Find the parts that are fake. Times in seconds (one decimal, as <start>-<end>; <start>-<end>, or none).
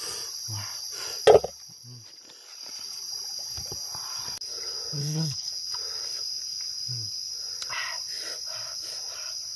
5.0-5.5